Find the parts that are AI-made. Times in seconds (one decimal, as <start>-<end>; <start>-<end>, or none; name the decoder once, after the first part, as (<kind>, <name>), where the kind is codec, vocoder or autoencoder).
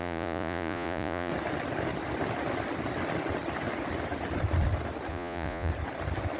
0.0-1.3 (vocoder, Vocos); 5.1-5.7